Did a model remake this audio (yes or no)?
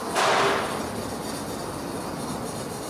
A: no